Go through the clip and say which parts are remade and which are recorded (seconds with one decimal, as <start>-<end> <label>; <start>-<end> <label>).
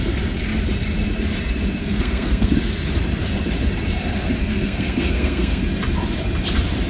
0.0-1.8 recorded; 1.8-2.5 remade; 2.5-4.4 recorded; 4.4-5.6 remade; 5.6-6.9 recorded